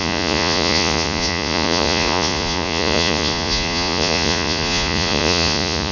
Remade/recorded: remade